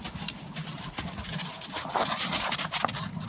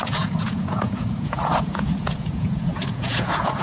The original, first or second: first